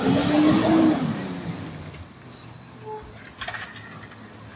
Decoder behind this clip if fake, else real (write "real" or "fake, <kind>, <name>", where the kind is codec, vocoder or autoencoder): real